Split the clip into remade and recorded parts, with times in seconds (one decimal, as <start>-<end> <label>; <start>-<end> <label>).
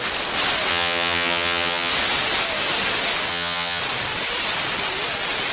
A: 0.0-0.7 recorded; 0.7-1.9 remade; 1.9-3.3 recorded; 3.3-3.8 remade; 3.8-5.5 recorded